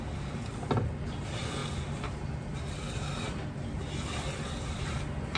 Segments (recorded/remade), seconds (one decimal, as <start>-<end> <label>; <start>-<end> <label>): 0.0-5.4 recorded